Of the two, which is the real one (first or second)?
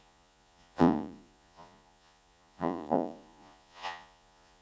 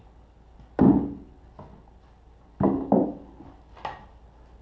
second